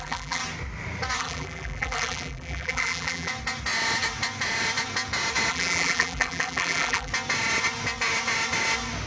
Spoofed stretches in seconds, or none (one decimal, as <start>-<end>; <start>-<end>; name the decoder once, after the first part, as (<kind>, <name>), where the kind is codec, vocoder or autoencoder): 0.0-0.4 (vocoder, BigVGAN v2); 1.2-3.3; 5.5-7.1